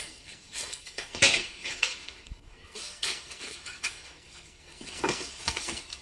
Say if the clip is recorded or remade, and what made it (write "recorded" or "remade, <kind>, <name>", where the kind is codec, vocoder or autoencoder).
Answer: remade, codec, SNAC